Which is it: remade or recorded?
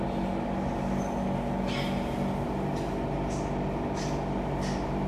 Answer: recorded